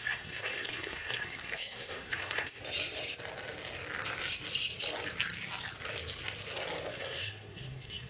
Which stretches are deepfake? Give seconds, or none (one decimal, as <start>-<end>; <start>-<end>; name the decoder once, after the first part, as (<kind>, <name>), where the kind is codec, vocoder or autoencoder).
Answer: 0.0-2.6 (codec, SNAC); 6.9-8.1